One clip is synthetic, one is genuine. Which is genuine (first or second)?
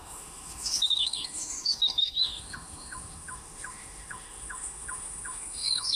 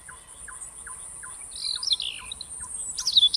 second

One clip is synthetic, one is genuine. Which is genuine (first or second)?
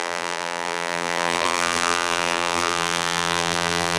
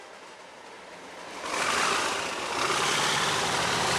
second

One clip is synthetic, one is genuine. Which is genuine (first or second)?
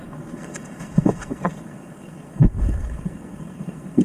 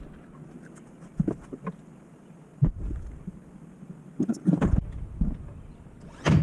second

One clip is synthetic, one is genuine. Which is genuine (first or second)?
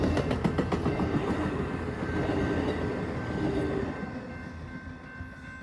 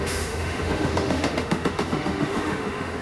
first